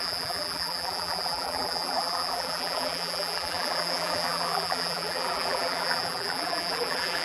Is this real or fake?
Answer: fake